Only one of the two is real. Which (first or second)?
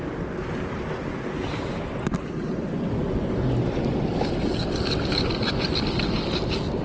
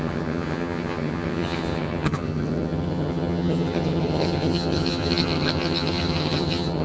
first